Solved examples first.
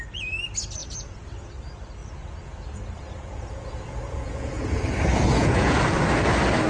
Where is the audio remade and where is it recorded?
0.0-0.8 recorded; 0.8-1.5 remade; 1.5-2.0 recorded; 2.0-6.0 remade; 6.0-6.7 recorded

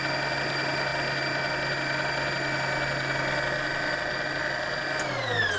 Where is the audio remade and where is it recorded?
0.0-5.6 recorded

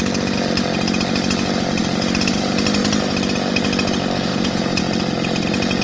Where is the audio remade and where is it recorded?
0.0-4.3 recorded; 4.3-4.8 remade; 4.8-5.8 recorded

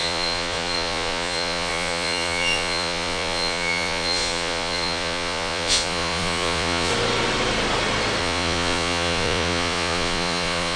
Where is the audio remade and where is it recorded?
0.0-6.9 remade; 6.9-8.2 recorded; 8.2-10.8 remade